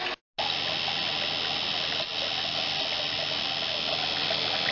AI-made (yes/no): no